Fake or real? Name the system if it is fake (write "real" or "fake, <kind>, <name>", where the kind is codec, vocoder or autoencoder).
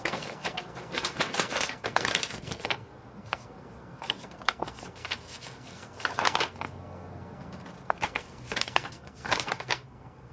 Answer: fake, codec, SNAC